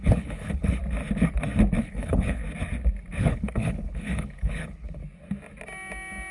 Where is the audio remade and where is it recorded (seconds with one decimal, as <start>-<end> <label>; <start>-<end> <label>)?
0.0-0.8 remade; 0.8-1.8 recorded; 1.8-2.4 remade; 2.4-3.2 recorded; 3.2-5.0 remade; 5.0-6.3 recorded